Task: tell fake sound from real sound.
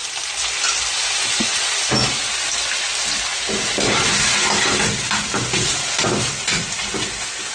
real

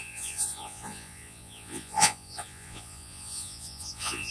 fake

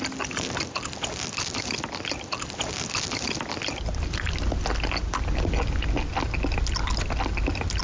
real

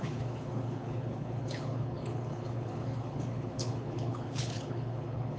fake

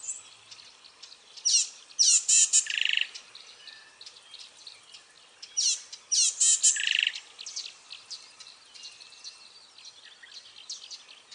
real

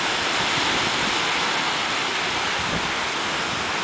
fake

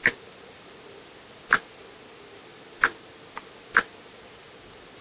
real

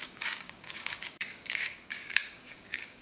fake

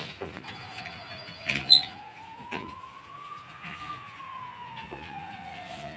fake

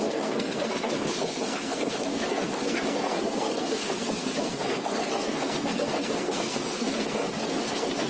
fake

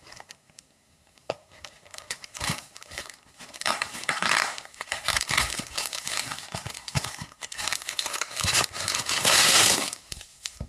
fake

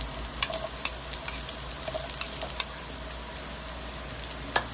real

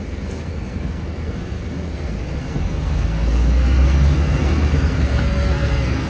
fake